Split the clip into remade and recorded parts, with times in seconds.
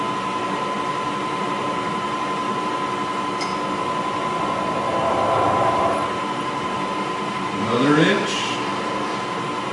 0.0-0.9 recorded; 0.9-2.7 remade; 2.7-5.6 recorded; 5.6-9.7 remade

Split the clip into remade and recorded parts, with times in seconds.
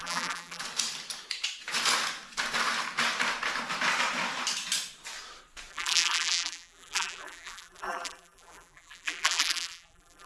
0.0-0.6 remade; 0.6-5.7 recorded; 5.7-10.3 remade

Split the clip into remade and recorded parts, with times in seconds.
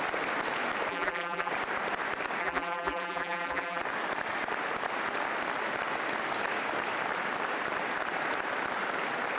0.0-0.9 recorded; 0.9-1.5 remade; 1.5-2.4 recorded; 2.4-3.8 remade; 3.8-9.4 recorded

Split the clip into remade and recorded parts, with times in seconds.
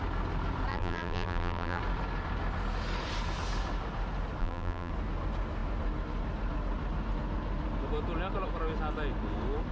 0.0-0.7 recorded; 0.7-1.8 remade; 1.8-4.4 recorded; 4.4-4.9 remade; 4.9-9.7 recorded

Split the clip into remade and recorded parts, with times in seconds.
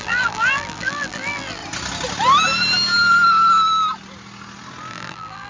0.0-1.6 remade; 1.6-4.9 recorded; 4.9-5.5 remade